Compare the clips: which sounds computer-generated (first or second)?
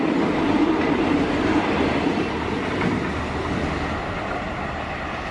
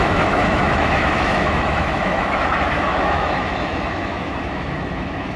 second